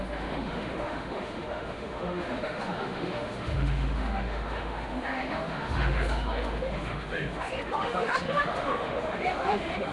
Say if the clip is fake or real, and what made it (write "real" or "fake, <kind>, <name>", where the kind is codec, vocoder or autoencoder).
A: fake, autoencoder, DAC-VAE